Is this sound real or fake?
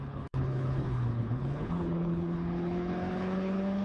fake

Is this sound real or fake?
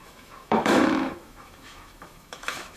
fake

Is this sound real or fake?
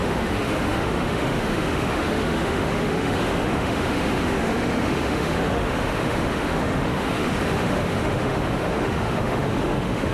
fake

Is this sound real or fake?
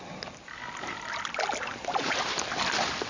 real